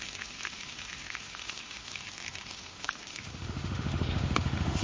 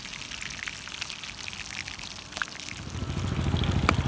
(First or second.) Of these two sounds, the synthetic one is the first